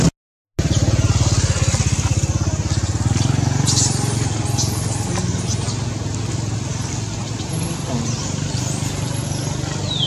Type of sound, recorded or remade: recorded